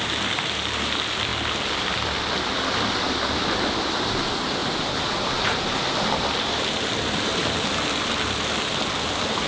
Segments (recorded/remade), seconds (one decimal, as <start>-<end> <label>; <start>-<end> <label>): 0.0-1.3 remade; 1.3-1.9 recorded; 1.9-9.5 remade